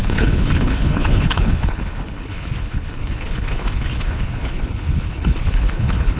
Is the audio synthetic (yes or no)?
yes